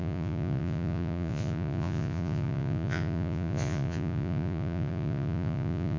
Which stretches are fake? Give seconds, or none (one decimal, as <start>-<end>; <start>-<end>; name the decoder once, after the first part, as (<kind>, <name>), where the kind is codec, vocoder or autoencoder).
0.0-6.0 (vocoder, Vocos)